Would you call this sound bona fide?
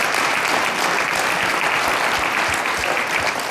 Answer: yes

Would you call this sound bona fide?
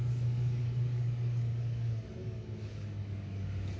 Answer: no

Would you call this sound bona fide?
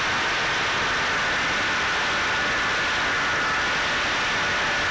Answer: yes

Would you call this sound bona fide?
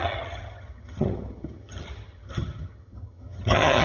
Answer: no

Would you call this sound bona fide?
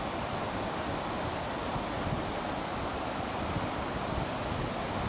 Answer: yes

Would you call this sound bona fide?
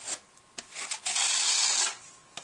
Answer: yes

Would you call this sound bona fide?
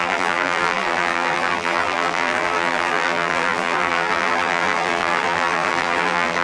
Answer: no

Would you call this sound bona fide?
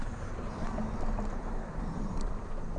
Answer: no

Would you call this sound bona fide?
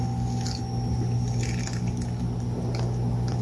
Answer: yes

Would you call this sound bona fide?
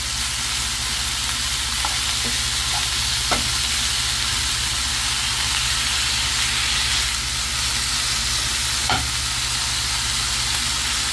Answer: yes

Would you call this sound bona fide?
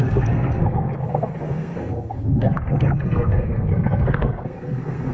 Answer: no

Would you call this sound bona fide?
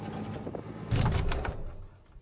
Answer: yes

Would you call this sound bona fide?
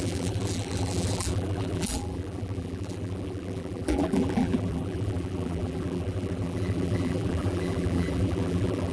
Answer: no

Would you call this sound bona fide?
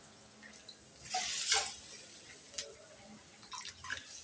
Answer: yes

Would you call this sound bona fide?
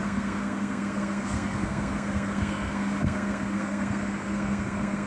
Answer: no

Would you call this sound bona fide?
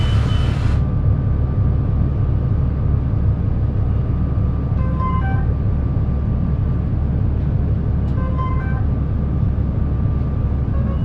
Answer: yes